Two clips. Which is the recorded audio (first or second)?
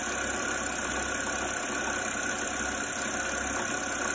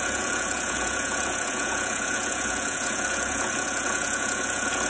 first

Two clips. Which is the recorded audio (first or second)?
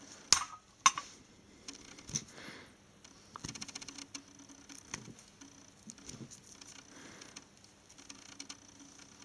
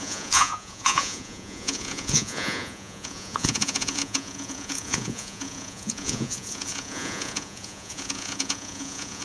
first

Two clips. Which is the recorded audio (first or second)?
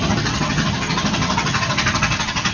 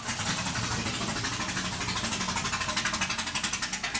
second